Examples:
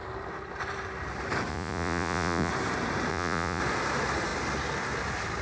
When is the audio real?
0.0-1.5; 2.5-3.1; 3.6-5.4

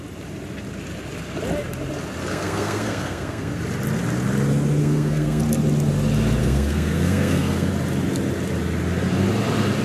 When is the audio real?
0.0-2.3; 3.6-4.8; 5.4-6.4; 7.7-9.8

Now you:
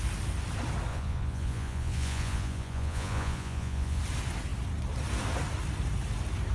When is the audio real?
0.0-0.9; 4.0-6.5

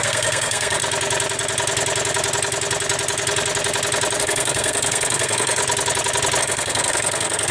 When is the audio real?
0.8-4.2; 5.6-6.4

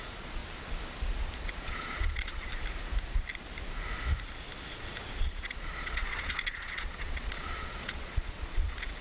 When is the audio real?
0.4-1.5; 2.5-5.2

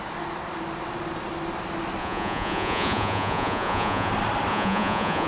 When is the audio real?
0.0-2.0; 4.1-4.5

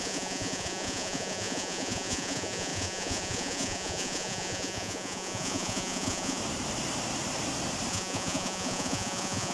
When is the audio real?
6.4-7.9